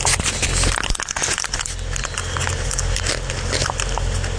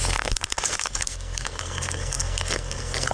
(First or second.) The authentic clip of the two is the first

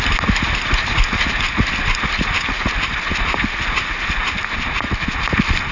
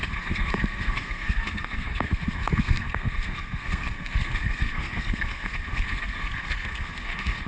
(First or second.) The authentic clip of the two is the first